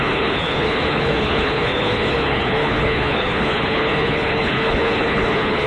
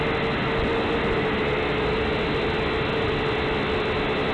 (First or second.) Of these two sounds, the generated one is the first